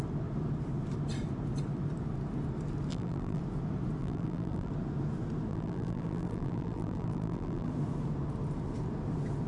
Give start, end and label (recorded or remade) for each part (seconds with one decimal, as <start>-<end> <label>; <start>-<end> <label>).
0.0-2.9 recorded; 2.9-3.4 remade; 3.4-4.0 recorded; 4.0-4.7 remade; 4.7-5.5 recorded; 5.5-7.7 remade; 7.7-9.5 recorded